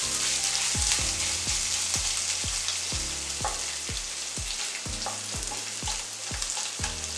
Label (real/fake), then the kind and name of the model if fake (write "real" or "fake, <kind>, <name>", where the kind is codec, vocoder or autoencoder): real